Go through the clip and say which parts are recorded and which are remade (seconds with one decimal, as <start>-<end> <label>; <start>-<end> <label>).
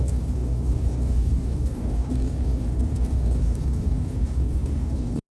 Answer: 0.0-5.3 remade